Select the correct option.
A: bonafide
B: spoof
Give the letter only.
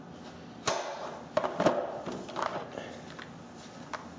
A